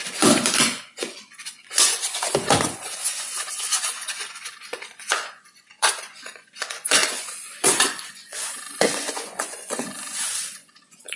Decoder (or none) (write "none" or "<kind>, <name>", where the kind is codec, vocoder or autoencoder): vocoder, Vocos